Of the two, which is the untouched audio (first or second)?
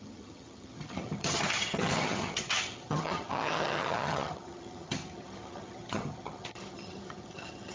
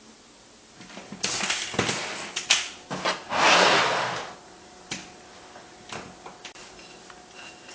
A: second